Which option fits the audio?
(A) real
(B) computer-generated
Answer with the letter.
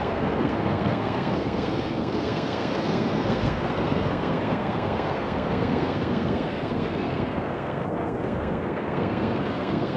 B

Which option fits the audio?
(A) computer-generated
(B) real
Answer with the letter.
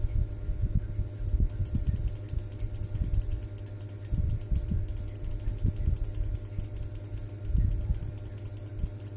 B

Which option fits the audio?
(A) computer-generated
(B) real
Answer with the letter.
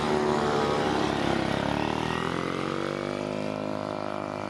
B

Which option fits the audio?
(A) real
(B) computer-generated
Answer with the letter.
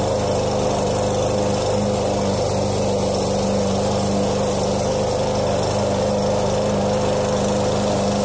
A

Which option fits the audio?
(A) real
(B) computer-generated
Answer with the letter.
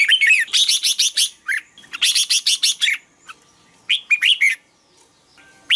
A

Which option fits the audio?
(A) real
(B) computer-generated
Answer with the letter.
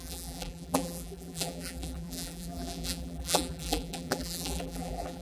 B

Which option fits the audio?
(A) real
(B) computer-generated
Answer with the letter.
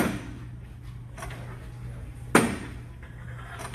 A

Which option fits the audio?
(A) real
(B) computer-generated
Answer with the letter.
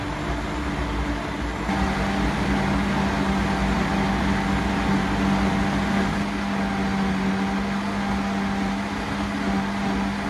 A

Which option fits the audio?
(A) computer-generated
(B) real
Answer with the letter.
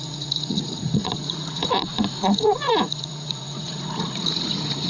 A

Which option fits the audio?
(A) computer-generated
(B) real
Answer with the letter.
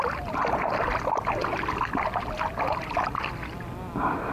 B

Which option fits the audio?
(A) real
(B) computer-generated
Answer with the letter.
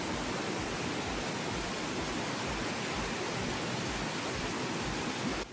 A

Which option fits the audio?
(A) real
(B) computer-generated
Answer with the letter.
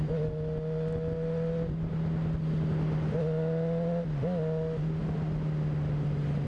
A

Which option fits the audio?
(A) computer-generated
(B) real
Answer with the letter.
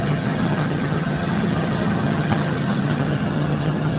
A